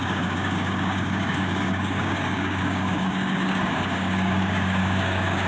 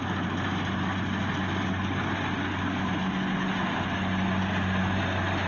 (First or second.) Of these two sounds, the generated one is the first